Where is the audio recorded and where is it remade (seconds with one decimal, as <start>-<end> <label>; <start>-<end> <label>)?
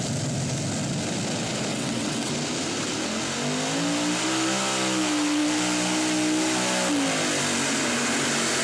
0.0-1.7 recorded; 1.7-2.3 remade; 2.3-8.6 recorded